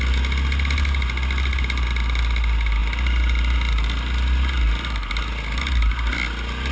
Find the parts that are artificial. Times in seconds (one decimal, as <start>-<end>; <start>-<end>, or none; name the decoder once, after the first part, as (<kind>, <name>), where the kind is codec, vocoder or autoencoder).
none